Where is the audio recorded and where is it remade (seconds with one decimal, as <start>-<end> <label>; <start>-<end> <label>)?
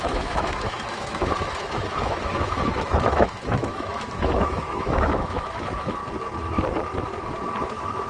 0.0-6.0 remade; 6.0-7.6 recorded; 7.6-8.1 remade